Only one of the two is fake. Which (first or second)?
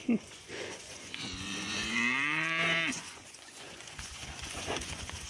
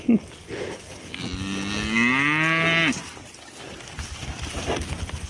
first